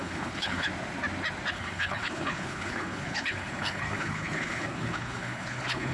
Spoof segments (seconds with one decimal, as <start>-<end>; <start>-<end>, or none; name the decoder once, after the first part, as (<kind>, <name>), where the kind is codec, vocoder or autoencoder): 0.0-0.7 (codec, HILCodec); 1.5-5.9